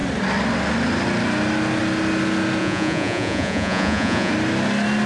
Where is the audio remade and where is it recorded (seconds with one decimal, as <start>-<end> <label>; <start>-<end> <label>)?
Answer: 0.0-2.6 recorded; 2.6-4.3 remade; 4.3-5.1 recorded